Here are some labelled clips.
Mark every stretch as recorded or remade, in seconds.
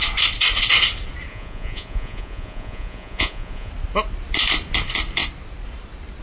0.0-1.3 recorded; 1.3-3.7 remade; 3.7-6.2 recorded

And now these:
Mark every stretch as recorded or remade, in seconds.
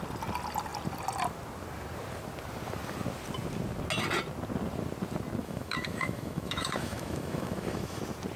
0.0-5.4 recorded; 5.4-8.0 remade; 8.0-8.4 recorded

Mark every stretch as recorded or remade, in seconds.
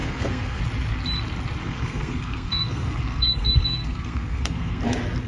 0.0-0.6 remade; 0.6-1.6 recorded; 1.6-4.8 remade; 4.8-5.3 recorded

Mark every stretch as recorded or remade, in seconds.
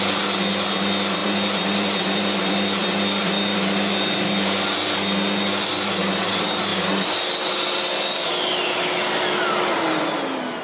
0.0-1.2 recorded; 1.2-6.3 remade; 6.3-6.7 recorded; 6.7-7.5 remade; 7.5-10.6 recorded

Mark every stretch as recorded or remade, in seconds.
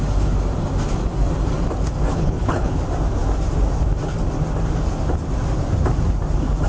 0.0-2.1 recorded; 2.1-2.7 remade; 2.7-6.7 recorded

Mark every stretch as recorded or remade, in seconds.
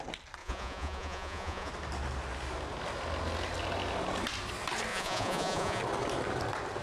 0.0-0.4 recorded; 0.4-1.7 remade; 1.7-4.9 recorded; 4.9-5.8 remade; 5.8-6.8 recorded